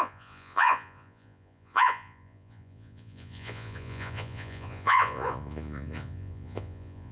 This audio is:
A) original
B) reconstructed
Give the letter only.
B